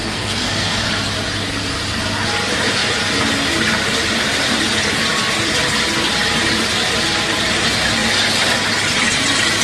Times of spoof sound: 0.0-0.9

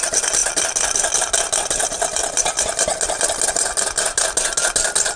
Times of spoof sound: none

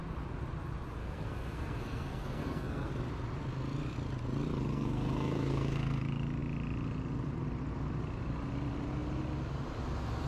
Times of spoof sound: 1.0-2.9; 4.7-6.0

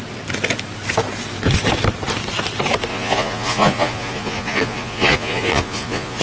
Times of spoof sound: 2.9-6.2

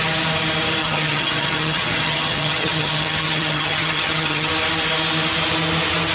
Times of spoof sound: 0.8-4.5

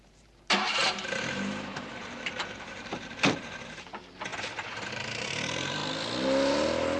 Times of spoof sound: 0.0-4.3; 4.9-5.8

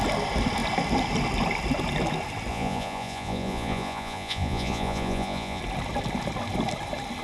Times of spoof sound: 2.5-5.6

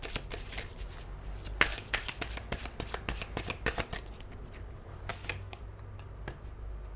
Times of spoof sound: 1.7-2.2; 5.1-5.6